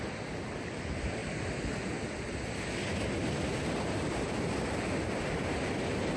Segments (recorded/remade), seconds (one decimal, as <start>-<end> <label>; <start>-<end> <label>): 0.0-6.2 recorded